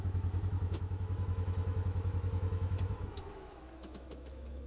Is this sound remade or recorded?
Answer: remade